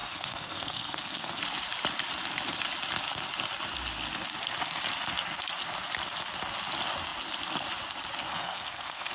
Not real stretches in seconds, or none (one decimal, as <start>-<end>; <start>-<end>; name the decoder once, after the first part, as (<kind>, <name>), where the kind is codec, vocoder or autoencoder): 0.0-1.4 (codec, SNAC); 8.3-9.1